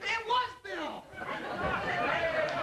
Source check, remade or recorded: remade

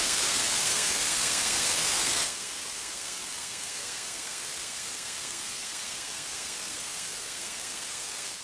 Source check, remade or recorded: remade